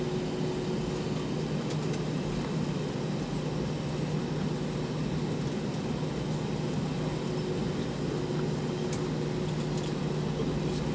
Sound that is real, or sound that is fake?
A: real